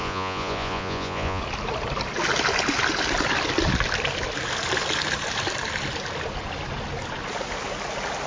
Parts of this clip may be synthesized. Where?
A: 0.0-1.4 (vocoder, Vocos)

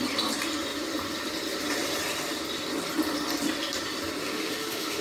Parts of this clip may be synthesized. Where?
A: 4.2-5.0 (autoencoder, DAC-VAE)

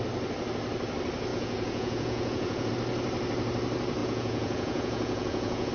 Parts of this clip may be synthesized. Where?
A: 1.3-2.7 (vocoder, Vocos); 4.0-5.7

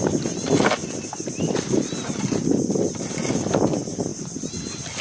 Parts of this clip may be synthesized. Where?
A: 0.8-3.3 (vocoder, BigVGAN v2); 4.1-5.0

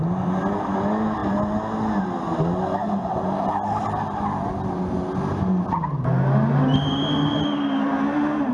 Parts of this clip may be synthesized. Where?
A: none

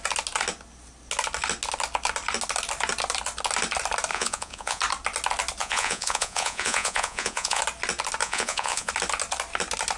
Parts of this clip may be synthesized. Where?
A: 4.1-4.8 (vocoder, Vocos); 5.6-7.6; 8.2-8.9

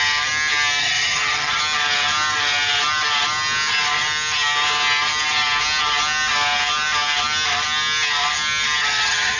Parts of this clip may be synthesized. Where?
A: 0.8-1.6 (vocoder, HiFi-GAN); 8.8-9.4